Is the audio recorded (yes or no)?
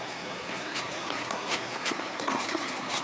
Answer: no